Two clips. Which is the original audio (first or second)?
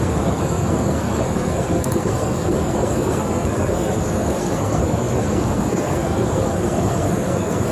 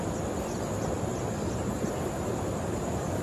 second